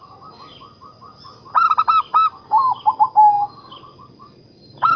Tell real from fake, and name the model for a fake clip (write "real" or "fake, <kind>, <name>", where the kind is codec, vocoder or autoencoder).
real